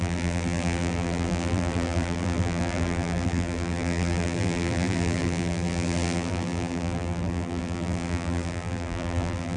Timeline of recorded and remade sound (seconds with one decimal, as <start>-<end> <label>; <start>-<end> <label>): 0.0-9.6 remade